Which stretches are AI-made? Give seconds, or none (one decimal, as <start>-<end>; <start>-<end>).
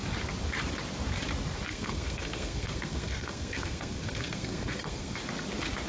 1.7-5.2